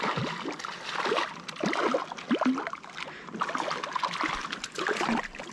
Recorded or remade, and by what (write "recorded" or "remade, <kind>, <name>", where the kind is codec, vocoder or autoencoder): recorded